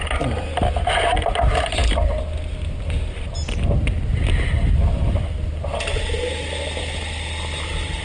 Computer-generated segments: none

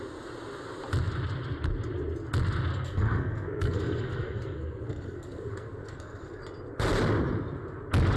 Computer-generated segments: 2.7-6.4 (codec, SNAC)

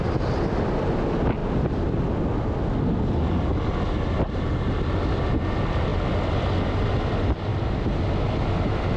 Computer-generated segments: none